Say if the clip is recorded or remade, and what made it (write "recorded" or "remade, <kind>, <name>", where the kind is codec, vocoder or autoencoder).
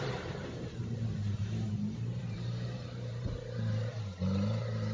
remade, vocoder, BigVGAN v2